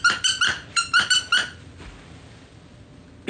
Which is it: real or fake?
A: real